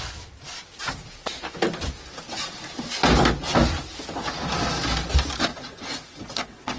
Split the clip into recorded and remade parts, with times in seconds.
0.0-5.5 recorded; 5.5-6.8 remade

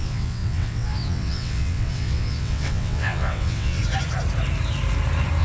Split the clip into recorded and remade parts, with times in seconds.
0.0-3.8 remade; 3.8-5.4 recorded

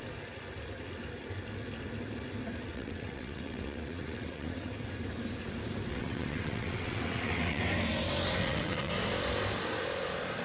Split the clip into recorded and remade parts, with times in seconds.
0.0-2.7 recorded; 2.7-4.7 remade; 4.7-5.9 recorded; 5.9-7.6 remade; 7.6-8.4 recorded; 8.4-8.9 remade; 8.9-10.4 recorded

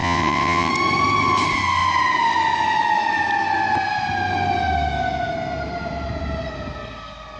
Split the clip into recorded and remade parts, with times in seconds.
0.0-0.7 remade; 0.7-7.4 recorded

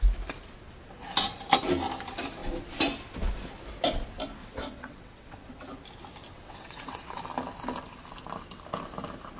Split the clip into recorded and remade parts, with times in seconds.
0.0-4.4 recorded; 4.4-5.6 remade; 5.6-6.3 recorded; 6.3-7.2 remade; 7.2-9.4 recorded

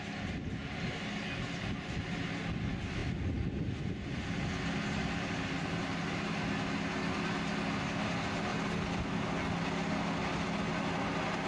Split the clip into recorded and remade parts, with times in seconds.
0.0-11.5 recorded

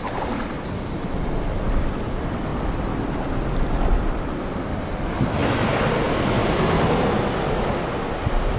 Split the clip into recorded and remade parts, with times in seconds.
0.0-8.6 recorded

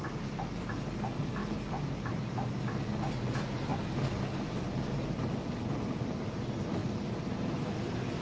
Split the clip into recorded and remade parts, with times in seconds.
0.0-8.2 recorded